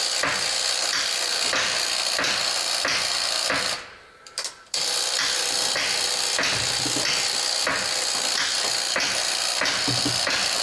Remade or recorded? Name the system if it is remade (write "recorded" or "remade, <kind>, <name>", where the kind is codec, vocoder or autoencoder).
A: recorded